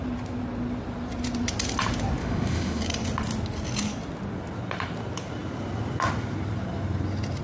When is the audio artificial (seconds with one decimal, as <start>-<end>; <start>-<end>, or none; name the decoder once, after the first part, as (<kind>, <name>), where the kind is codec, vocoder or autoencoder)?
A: 2.2-2.8 (autoencoder, DAC-VAE)

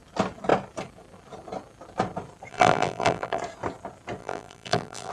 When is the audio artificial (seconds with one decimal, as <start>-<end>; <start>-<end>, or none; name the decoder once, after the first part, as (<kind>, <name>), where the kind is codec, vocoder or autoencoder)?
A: 2.5-3.4 (vocoder, BigVGAN v2); 4.2-5.1

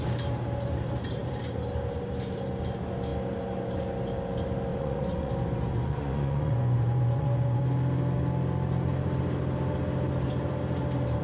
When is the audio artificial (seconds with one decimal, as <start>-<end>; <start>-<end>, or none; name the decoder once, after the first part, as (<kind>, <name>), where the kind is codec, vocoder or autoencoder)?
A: 4.7-5.3 (vocoder, Vocos); 5.7-7.6

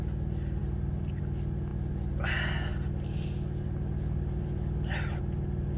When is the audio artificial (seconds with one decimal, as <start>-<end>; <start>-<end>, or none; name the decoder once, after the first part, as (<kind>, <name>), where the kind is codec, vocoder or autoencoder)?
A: none

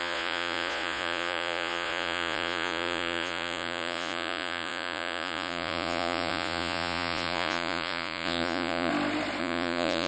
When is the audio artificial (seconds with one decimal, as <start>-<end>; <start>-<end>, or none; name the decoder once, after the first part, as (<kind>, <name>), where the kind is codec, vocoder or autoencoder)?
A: 0.0-8.9 (vocoder, Vocos); 9.4-10.1

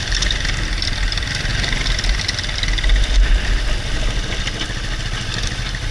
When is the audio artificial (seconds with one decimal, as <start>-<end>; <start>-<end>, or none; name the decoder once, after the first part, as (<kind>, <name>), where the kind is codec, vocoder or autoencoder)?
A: none

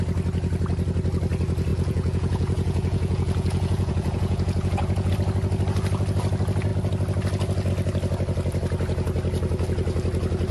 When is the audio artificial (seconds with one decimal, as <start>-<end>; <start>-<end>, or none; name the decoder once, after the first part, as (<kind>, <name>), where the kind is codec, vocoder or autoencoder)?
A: 1.7-5.1 (vocoder, Vocos)